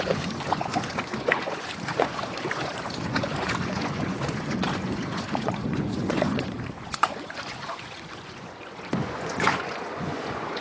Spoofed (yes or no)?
yes